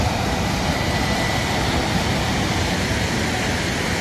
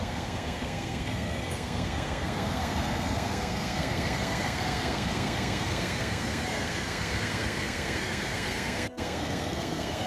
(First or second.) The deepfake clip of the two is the second